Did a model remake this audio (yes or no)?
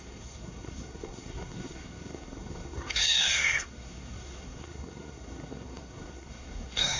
yes